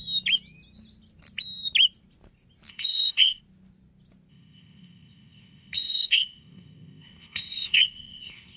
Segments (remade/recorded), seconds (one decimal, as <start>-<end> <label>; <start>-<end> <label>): 0.0-2.7 recorded; 2.7-3.4 remade; 3.4-4.3 recorded; 4.3-8.6 remade